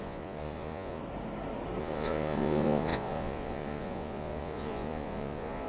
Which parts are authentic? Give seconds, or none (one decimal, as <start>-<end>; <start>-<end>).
1.0-1.8